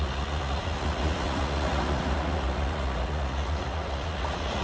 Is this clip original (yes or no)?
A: no